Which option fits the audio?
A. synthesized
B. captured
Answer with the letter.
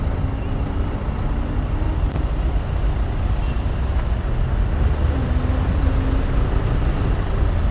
B